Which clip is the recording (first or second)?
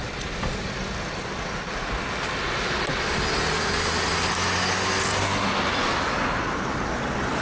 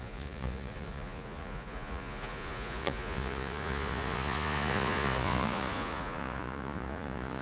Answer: first